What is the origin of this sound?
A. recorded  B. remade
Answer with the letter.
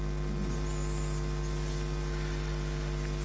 A